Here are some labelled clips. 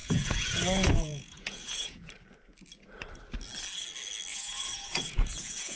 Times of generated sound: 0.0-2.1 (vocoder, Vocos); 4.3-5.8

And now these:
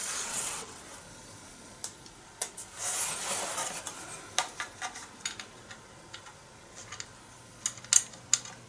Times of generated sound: 0.0-0.8 (vocoder, WaveNeXt)

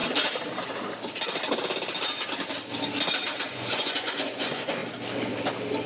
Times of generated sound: 3.5-4.8 (vocoder, Vocos)

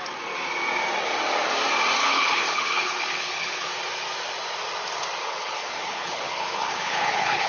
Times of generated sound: 2.0-3.7 (codec, HILCodec); 5.2-7.5

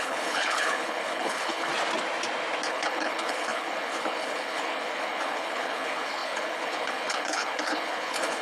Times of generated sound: 0.0-1.7 (codec, HILCodec); 2.7-8.4

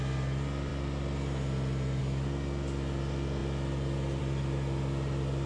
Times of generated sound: none

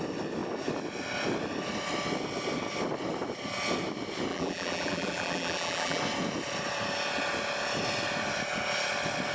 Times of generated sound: 4.3-6.0 (vocoder, BigVGAN v2)

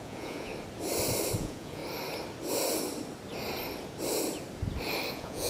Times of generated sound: 0.0-0.5 (vocoder, Vocos); 1.4-1.8; 5.1-5.5